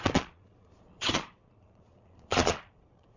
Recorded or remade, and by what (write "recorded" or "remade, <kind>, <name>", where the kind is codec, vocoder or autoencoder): remade, vocoder, Vocos